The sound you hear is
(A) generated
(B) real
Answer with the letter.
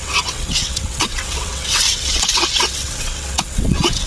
A